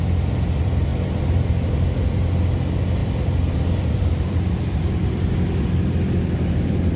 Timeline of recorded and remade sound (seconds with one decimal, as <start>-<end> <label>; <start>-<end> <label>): 0.0-0.9 recorded; 0.9-1.5 remade; 1.5-3.0 recorded; 3.0-4.9 remade; 4.9-7.0 recorded

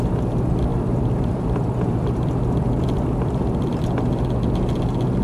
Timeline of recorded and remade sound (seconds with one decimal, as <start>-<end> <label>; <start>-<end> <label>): 0.0-0.7 recorded; 0.7-3.8 remade; 3.8-5.2 recorded

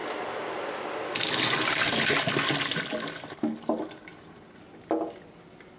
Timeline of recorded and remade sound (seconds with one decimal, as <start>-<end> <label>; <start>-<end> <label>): 0.0-5.8 recorded

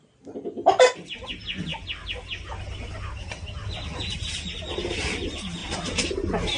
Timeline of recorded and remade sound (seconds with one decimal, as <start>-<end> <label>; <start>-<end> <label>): 0.0-5.6 recorded; 5.6-6.6 remade

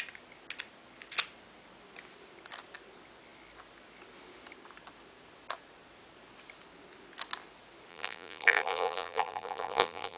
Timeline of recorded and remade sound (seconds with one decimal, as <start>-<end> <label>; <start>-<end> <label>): 0.0-7.9 recorded; 7.9-10.2 remade

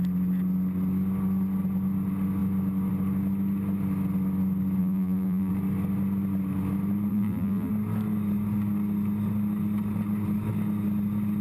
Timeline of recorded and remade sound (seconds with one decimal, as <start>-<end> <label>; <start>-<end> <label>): 0.0-4.8 recorded; 4.8-5.5 remade; 5.5-7.1 recorded; 7.1-7.7 remade; 7.7-11.4 recorded

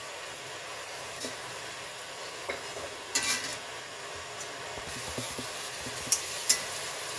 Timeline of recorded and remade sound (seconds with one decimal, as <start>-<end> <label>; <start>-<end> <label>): 0.0-0.7 recorded; 0.7-1.6 remade; 1.6-7.2 recorded